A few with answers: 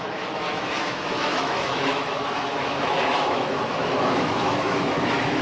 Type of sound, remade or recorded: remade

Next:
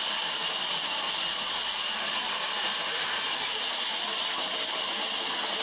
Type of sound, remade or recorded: recorded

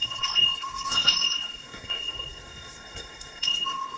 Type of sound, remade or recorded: remade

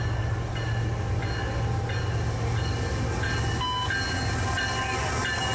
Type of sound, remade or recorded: recorded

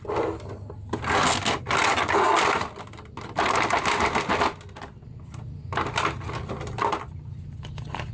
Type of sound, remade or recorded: recorded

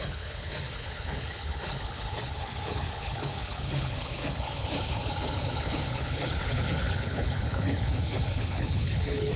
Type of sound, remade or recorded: remade